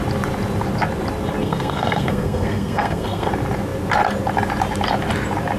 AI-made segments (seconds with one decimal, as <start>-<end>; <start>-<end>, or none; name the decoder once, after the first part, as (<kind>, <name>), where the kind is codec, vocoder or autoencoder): 1.4-3.3 (codec, SNAC)